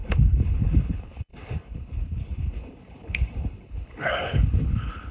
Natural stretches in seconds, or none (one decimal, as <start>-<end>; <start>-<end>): none